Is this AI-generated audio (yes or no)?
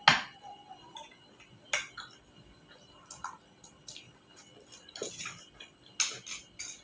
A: no